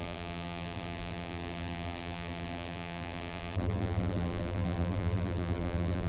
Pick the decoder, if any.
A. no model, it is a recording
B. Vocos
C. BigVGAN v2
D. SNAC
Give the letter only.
C